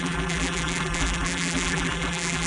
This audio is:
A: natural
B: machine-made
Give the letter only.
B